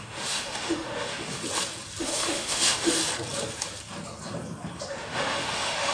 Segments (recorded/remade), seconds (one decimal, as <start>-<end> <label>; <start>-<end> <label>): 0.0-1.4 remade; 1.4-2.0 recorded; 2.0-3.0 remade; 3.0-4.9 recorded; 4.9-5.9 remade